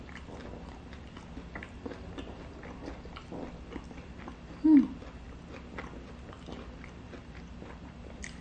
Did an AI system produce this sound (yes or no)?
no